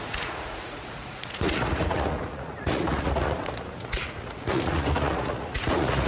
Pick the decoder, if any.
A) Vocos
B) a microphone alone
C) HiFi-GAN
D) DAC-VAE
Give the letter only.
A